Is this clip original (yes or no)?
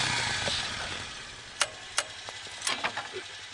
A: yes